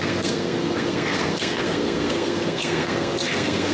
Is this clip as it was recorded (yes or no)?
no